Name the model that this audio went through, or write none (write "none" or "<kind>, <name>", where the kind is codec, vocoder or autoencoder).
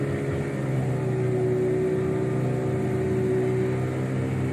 none